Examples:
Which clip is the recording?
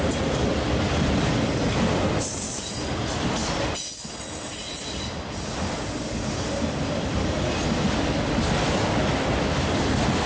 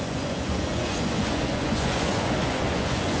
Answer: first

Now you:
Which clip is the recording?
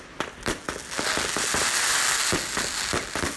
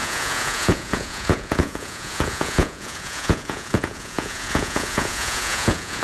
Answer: first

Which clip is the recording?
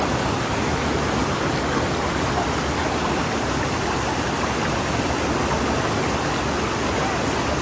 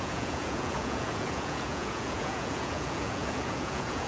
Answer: first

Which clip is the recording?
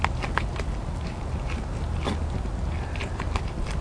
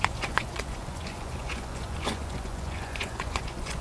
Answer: first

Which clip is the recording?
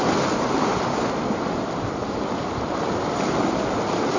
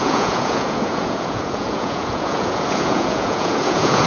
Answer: first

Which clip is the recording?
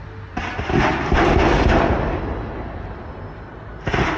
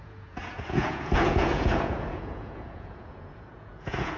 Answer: first